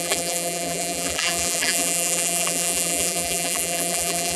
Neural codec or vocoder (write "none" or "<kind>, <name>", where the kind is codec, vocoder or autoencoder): vocoder, BigVGAN v2